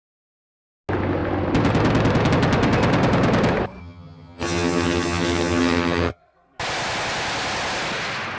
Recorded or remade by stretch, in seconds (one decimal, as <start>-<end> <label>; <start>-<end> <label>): 0.0-3.8 recorded; 3.8-6.2 remade; 6.2-8.4 recorded